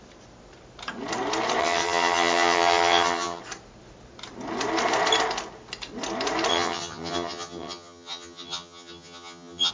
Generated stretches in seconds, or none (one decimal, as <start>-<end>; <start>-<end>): 1.6-3.4; 6.5-9.7